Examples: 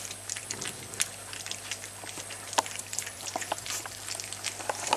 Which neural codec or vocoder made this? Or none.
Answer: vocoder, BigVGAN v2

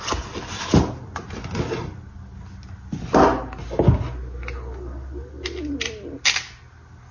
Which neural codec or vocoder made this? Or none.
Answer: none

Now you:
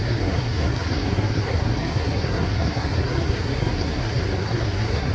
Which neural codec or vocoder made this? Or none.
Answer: codec, SNAC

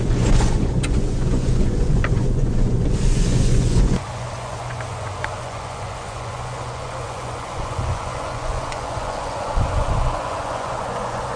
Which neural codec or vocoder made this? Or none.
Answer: vocoder, Vocos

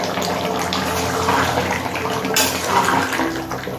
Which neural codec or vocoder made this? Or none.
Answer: vocoder, BigVGAN v2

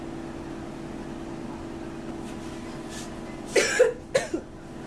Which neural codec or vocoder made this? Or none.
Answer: none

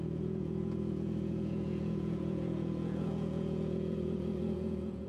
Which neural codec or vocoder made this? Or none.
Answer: vocoder, Vocos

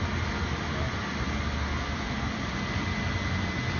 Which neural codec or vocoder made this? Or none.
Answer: none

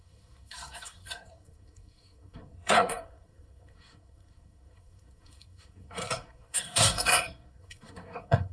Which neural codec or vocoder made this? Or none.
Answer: codec, SNAC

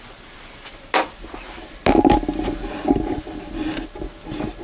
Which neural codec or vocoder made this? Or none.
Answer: none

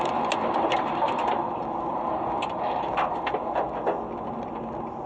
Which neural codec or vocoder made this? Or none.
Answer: none